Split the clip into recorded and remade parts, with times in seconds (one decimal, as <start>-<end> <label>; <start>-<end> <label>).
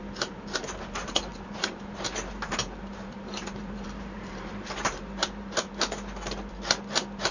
0.0-1.3 recorded; 1.3-5.7 remade; 5.7-7.3 recorded